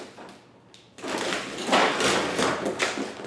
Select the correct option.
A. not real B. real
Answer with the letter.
B